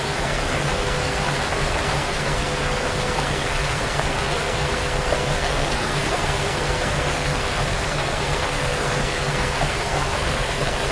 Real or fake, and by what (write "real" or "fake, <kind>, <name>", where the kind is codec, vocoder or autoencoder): fake, codec, SNAC